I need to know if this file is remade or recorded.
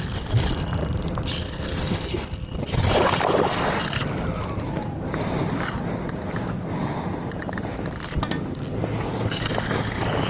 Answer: recorded